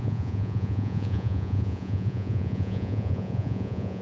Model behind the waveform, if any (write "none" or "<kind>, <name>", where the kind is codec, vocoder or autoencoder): vocoder, Vocos